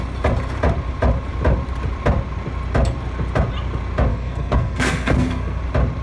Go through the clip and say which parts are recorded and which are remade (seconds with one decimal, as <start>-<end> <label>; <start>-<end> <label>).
0.0-4.1 recorded; 4.1-5.6 remade; 5.6-6.0 recorded